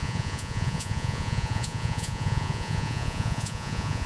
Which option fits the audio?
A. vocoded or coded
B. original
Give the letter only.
A